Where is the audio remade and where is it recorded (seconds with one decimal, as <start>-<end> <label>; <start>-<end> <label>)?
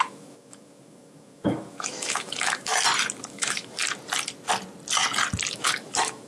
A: 0.0-2.7 remade; 2.7-3.2 recorded; 3.2-3.8 remade; 3.8-5.5 recorded; 5.5-6.3 remade